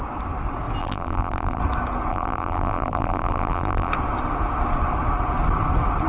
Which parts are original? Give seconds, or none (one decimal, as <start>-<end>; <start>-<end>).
0.0-0.8; 1.6-2.1; 3.9-6.1